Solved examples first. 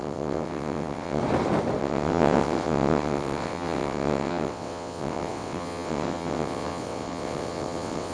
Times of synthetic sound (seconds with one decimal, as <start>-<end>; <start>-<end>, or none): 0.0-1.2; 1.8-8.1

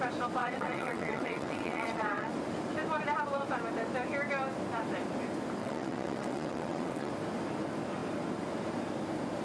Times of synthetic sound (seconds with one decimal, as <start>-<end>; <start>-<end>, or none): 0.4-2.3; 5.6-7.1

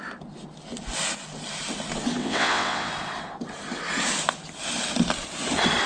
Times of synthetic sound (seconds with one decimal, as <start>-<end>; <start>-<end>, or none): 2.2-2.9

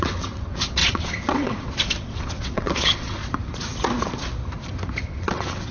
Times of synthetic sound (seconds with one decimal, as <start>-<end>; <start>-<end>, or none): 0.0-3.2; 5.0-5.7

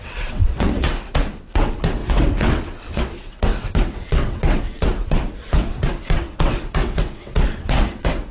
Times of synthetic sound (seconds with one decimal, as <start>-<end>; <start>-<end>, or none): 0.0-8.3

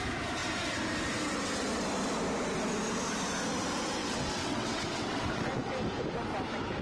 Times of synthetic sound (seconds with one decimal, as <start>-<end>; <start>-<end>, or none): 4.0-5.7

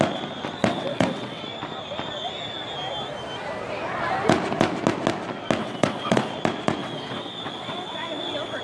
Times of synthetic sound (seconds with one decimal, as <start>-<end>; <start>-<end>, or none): 0.6-1.4; 5.6-6.3; 6.8-8.6

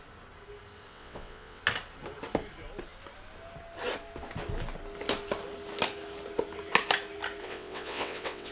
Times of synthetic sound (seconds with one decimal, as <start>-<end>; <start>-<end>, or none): 0.9-1.6; 7.4-8.5